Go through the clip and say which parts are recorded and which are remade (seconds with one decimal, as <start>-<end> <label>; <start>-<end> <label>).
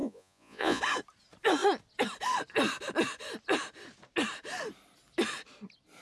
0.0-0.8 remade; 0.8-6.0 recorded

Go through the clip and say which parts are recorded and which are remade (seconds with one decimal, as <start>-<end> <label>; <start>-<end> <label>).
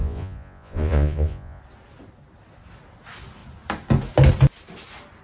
0.0-1.6 remade; 1.6-5.2 recorded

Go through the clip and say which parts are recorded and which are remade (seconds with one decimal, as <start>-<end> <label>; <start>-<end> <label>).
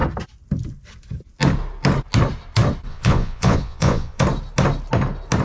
0.0-2.9 recorded; 2.9-4.2 remade; 4.2-5.4 recorded